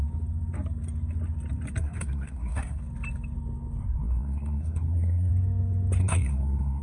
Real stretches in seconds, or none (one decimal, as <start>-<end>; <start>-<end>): 0.0-1.8; 2.8-3.8; 5.3-6.0